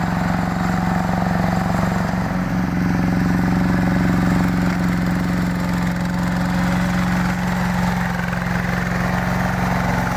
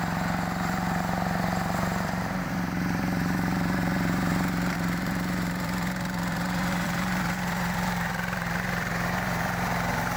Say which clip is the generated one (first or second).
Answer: second